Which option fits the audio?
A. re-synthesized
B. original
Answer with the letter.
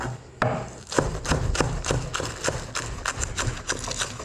B